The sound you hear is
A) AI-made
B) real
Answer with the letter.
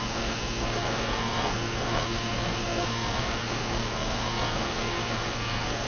A